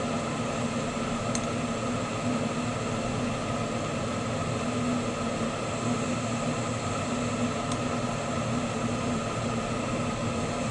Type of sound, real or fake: real